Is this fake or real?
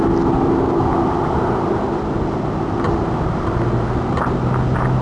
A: real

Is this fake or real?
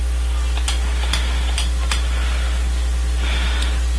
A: real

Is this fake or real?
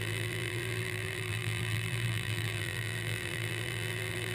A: fake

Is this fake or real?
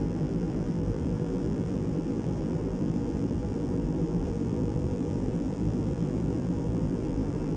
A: fake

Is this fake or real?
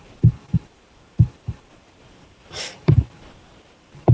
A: fake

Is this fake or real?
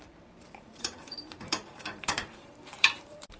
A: fake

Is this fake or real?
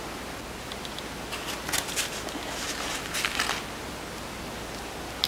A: real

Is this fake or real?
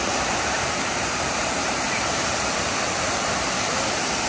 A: fake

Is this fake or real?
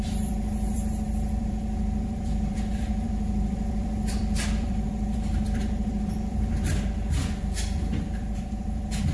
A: fake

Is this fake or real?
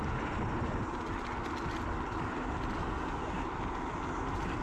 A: real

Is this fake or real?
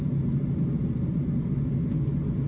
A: real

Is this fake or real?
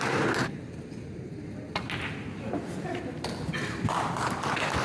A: real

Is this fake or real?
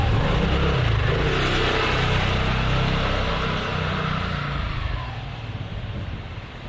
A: real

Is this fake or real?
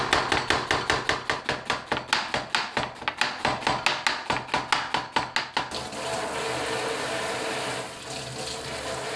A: real